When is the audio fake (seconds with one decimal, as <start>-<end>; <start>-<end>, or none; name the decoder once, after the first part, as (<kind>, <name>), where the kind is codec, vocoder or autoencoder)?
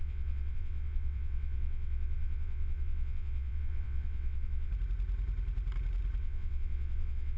0.0-4.7 (vocoder, WaveNeXt); 6.2-7.4